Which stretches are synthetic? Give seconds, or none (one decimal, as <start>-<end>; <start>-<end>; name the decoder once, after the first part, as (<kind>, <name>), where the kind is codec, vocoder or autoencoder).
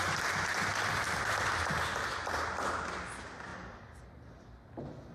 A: 0.7-1.5 (vocoder, BigVGAN v2); 3.5-4.0